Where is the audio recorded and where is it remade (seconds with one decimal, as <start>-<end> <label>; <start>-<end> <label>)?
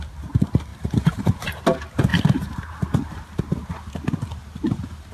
0.0-0.7 recorded; 0.7-1.4 remade; 1.4-2.1 recorded; 2.1-3.9 remade; 3.9-4.4 recorded; 4.4-5.1 remade